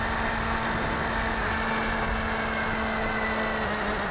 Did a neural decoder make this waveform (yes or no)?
no